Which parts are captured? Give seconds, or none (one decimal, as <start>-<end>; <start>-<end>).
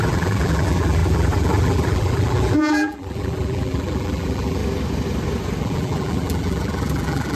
4.6-5.6